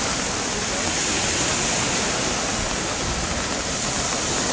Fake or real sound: real